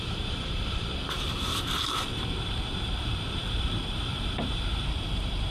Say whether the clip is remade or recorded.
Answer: remade